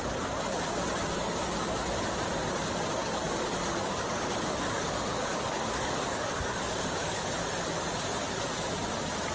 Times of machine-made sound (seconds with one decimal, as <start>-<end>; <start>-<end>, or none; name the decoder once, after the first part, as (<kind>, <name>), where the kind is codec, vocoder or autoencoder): 3.0-7.2 (codec, DAC)